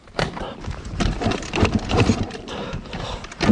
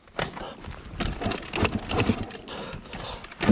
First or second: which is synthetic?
first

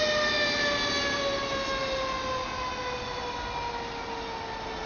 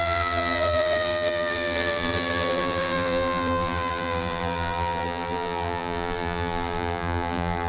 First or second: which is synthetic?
second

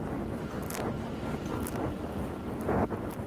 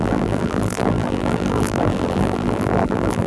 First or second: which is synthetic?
second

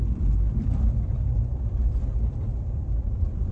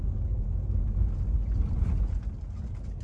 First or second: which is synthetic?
first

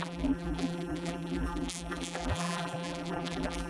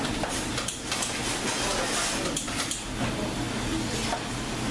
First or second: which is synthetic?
first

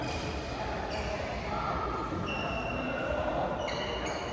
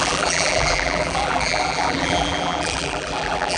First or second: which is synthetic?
second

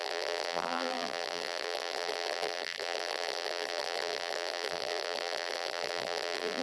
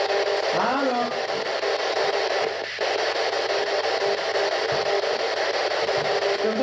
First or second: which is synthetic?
first